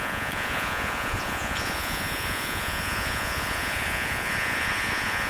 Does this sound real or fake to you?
fake